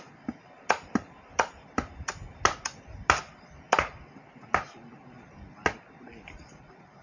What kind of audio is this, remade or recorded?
recorded